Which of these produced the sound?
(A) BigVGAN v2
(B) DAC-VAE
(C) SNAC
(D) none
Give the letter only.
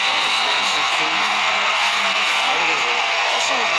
C